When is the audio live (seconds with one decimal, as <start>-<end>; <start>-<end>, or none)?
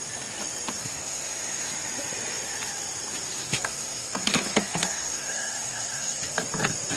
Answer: 0.0-0.8; 1.7-3.4; 6.3-7.0